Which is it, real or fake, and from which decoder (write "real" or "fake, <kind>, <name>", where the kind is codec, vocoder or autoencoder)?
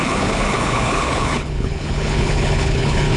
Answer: fake, codec, HILCodec